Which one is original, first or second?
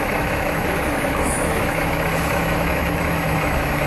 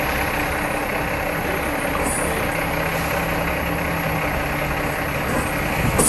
second